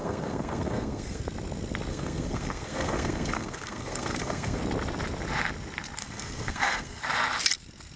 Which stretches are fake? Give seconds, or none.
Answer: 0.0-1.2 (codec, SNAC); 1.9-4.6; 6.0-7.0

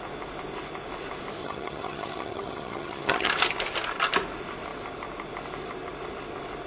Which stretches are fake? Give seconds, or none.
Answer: 1.4-3.3 (vocoder, HiFi-GAN)

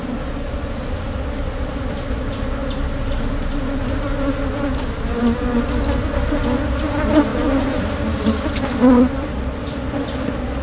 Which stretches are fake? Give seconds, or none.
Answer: none

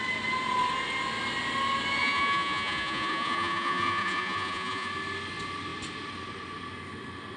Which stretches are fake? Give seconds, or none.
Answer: 2.0-4.9 (vocoder, Vocos)

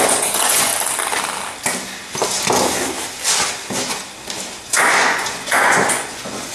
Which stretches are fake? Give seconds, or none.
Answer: 0.0-0.7 (vocoder, Vocos); 4.6-6.5